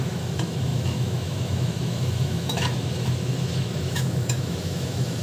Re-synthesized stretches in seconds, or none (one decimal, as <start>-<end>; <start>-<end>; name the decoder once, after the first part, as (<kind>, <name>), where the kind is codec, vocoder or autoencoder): 0.0-5.2 (autoencoder, DAC-VAE)